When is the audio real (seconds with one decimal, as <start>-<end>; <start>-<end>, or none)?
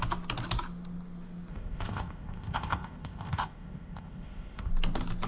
0.0-1.5; 4.7-5.3